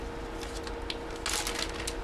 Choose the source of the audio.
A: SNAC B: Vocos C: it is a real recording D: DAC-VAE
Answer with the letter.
C